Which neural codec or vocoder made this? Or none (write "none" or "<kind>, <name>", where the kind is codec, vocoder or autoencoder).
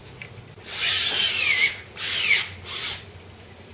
none